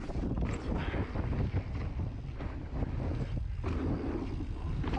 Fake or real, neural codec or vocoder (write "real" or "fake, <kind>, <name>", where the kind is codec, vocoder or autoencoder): real